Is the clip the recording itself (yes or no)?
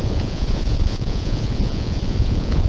no